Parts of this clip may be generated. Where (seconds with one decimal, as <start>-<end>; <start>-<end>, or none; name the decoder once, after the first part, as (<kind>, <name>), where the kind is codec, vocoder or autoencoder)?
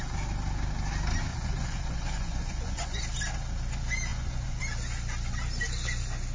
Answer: 1.3-3.0 (vocoder, Vocos); 4.1-4.6